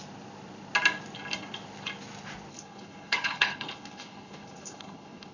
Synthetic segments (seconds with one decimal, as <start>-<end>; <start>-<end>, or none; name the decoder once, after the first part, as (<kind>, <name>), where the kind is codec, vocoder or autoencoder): 2.5-5.3 (codec, HILCodec)